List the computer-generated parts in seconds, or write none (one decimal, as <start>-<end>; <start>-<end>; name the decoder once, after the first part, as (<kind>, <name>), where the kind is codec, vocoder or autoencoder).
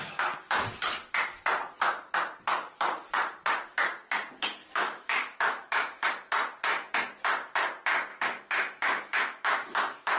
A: 4.6-6.1 (autoencoder, DAC-VAE); 8.1-10.2